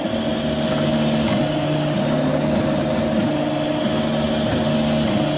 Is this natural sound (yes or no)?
yes